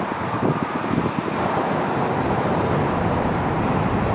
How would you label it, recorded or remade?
remade